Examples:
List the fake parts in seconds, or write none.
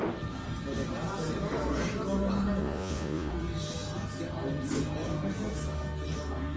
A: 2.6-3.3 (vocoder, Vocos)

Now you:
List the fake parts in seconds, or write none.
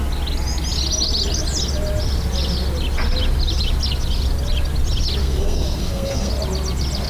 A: 5.2-6.3 (codec, SNAC)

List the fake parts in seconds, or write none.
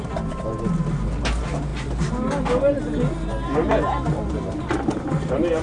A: none